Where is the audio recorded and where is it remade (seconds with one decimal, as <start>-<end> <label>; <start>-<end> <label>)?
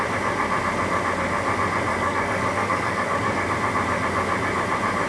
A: 0.0-1.9 recorded; 1.9-3.5 remade; 3.5-5.1 recorded